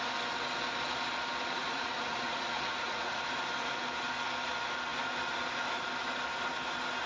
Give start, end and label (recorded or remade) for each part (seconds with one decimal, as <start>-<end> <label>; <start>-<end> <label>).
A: 0.0-1.6 recorded; 1.6-3.2 remade; 3.2-7.1 recorded